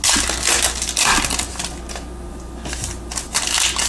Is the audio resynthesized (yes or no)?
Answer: no